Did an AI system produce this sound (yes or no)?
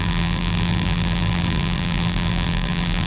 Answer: yes